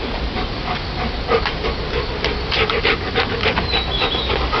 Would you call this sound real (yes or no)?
yes